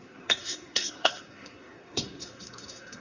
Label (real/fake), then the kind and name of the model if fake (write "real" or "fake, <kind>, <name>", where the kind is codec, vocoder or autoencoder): fake, codec, SNAC